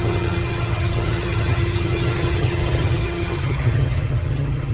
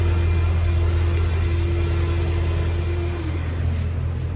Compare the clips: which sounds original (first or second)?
second